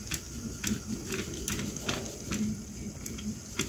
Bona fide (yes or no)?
yes